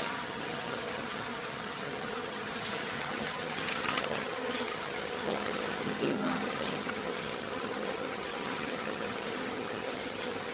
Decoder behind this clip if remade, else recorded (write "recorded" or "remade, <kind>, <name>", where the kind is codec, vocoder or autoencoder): remade, vocoder, HiFi-GAN